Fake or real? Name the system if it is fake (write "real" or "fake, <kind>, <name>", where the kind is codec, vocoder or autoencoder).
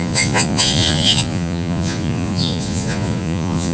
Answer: fake, vocoder, Vocos